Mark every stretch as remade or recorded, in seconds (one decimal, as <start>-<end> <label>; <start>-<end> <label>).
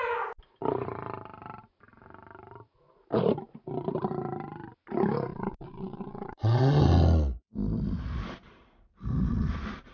0.0-5.3 recorded; 5.3-6.6 remade; 6.6-9.9 recorded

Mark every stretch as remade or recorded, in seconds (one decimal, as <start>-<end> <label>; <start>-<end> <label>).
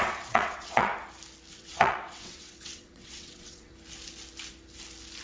0.0-0.9 remade; 0.9-1.5 recorded; 1.5-3.7 remade; 3.7-5.2 recorded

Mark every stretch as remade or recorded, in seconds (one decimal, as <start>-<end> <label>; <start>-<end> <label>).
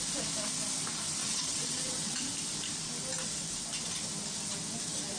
0.0-1.2 recorded; 1.2-2.3 remade; 2.3-5.2 recorded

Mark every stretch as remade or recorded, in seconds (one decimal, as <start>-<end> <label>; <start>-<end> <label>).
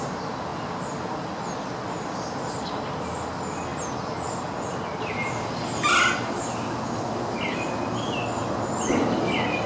0.0-9.7 recorded